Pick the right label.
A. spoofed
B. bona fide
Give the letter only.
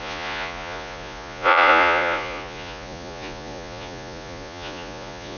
A